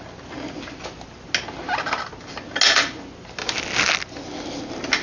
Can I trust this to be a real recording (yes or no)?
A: yes